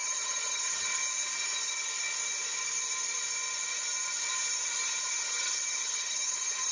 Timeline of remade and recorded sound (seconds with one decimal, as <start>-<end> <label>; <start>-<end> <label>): 0.0-1.0 remade; 1.0-5.0 recorded; 5.0-6.7 remade